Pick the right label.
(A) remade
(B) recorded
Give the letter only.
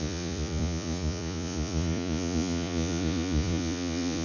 A